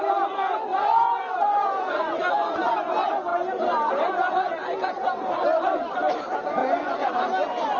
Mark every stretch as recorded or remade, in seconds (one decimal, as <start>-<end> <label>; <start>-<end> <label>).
0.0-0.7 recorded; 0.7-2.7 remade; 2.7-6.6 recorded; 6.6-7.1 remade; 7.1-7.8 recorded